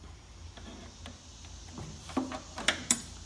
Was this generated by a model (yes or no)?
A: no